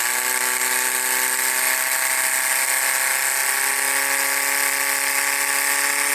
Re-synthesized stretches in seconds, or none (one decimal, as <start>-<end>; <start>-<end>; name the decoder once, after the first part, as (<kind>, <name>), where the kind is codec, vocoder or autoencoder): none